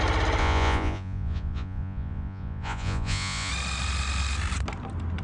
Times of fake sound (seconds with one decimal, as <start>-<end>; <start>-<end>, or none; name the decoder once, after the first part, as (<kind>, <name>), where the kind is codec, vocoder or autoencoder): 0.4-3.5 (vocoder, Vocos)

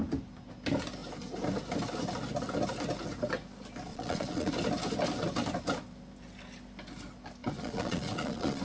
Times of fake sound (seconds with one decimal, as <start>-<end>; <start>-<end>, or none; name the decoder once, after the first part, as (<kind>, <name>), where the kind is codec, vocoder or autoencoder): 3.9-4.5 (vocoder, Vocos); 7.4-8.6

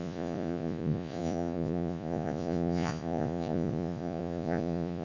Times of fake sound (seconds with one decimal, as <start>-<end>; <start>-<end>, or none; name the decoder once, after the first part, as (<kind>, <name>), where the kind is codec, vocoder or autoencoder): 0.0-5.0 (vocoder, Vocos)

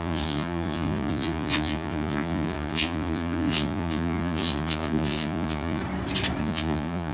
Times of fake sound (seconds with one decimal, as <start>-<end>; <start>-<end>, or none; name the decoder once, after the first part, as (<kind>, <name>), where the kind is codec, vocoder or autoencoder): 0.0-5.8 (vocoder, Vocos); 6.4-7.1

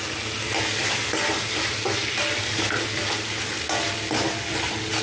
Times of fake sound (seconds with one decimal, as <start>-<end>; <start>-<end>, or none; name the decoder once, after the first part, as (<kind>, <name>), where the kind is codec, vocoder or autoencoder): none